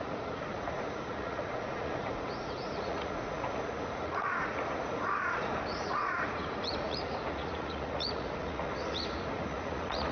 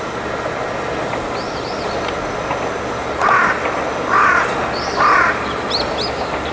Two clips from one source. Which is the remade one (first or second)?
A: first